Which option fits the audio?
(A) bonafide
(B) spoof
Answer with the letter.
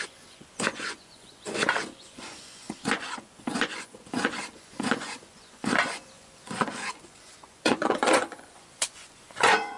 B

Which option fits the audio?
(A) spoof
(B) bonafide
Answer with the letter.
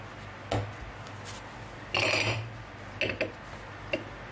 B